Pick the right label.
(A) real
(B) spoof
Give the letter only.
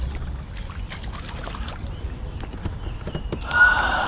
A